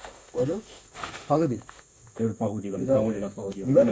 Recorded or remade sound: remade